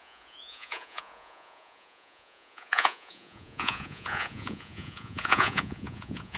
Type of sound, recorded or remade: remade